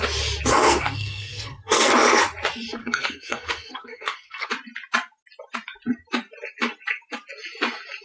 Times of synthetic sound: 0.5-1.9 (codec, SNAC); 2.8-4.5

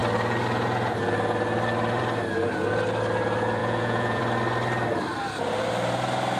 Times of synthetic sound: 3.6-4.2 (vocoder, Vocos)